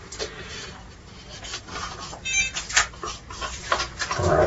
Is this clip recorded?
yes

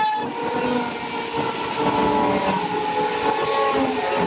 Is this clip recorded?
yes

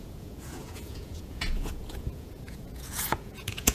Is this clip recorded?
no